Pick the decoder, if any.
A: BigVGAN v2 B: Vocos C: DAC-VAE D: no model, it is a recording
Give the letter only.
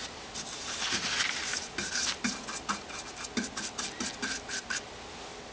D